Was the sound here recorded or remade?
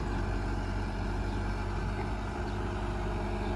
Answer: recorded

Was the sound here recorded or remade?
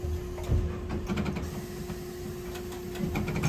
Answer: recorded